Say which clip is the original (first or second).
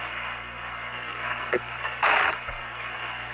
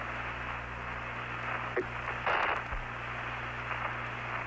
second